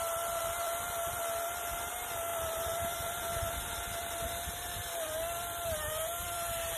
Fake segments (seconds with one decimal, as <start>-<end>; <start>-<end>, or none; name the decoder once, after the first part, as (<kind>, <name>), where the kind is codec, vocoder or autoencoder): 0.4-1.1 (vocoder, BigVGAN v2); 2.3-6.8